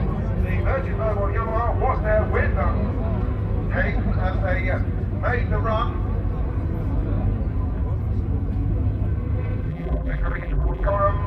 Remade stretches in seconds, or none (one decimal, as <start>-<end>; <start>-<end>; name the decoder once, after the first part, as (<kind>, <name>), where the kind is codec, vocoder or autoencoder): 9.7-10.9 (vocoder, BigVGAN v2)